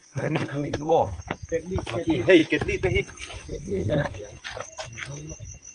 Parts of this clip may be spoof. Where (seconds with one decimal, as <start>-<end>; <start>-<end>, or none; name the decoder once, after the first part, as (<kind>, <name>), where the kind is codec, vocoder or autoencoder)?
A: 0.0-1.2 (codec, SNAC); 3.5-4.2